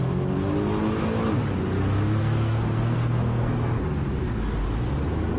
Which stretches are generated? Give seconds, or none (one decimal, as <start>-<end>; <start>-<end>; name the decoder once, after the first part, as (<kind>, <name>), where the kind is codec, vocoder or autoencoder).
2.2-3.8 (codec, SNAC)